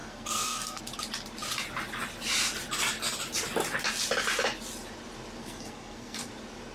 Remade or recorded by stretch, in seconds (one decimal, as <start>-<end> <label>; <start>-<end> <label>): 0.0-0.8 remade; 0.8-5.4 recorded; 5.4-6.3 remade; 6.3-6.7 recorded